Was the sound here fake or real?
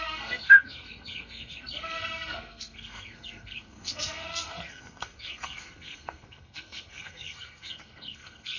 fake